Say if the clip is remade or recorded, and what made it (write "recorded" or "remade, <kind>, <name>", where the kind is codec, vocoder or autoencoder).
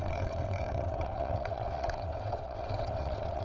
remade, vocoder, WaveNeXt